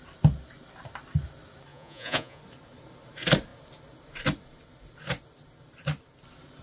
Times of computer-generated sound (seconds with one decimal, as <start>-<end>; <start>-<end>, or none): 1.7-2.4